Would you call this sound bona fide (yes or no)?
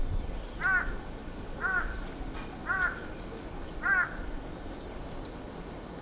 yes